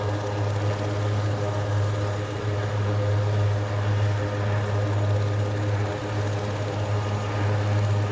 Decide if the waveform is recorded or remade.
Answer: recorded